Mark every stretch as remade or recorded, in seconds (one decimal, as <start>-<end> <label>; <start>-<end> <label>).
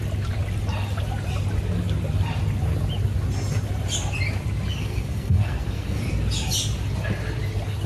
0.0-4.7 recorded; 4.7-6.0 remade; 6.0-7.9 recorded